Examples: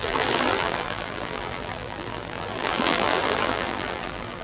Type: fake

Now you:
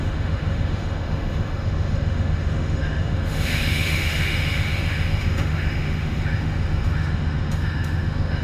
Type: fake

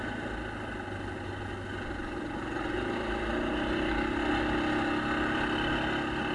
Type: real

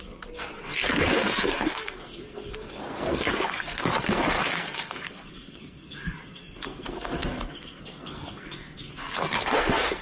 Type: fake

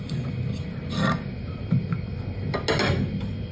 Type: real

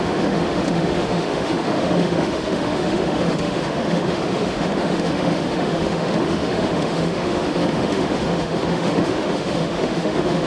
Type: fake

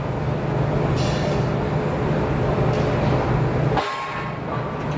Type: real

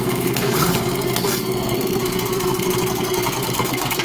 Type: fake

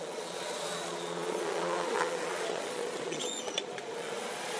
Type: fake